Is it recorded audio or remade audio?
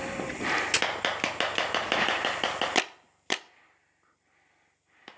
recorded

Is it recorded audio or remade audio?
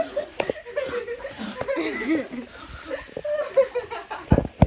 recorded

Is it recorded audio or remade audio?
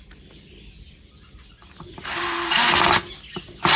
recorded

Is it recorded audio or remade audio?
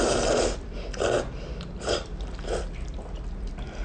recorded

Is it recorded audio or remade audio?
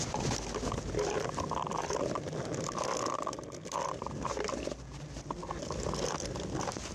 recorded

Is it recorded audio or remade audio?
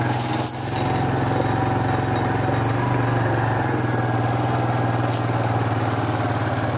recorded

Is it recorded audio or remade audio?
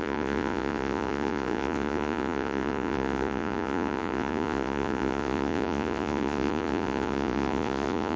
remade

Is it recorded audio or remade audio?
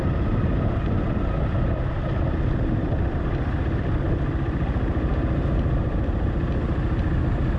recorded